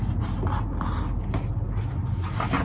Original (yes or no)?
yes